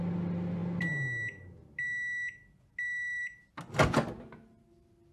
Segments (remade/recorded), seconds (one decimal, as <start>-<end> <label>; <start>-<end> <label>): 0.0-5.1 recorded